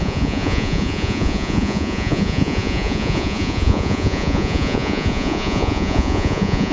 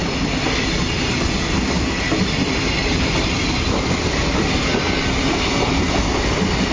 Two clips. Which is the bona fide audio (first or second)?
second